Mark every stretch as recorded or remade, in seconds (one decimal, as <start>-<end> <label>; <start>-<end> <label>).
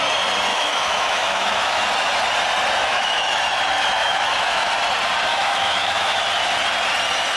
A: 0.0-0.5 recorded; 0.5-1.8 remade; 1.8-2.8 recorded; 2.8-3.4 remade; 3.4-4.0 recorded; 4.0-4.7 remade; 4.7-5.3 recorded; 5.3-6.2 remade; 6.2-7.4 recorded